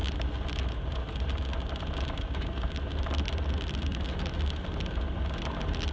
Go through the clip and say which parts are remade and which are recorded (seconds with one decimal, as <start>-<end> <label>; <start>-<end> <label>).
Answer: 0.0-5.9 recorded